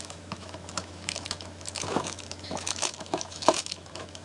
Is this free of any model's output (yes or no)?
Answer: no